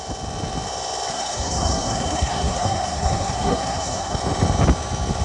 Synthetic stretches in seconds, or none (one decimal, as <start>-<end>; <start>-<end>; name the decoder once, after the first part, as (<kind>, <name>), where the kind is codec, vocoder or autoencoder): 1.1-4.2 (codec, SNAC)